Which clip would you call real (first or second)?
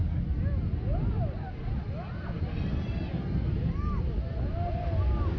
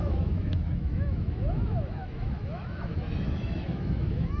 first